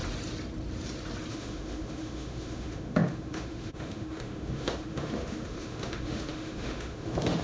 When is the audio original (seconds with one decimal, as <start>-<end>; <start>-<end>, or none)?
0.0-1.3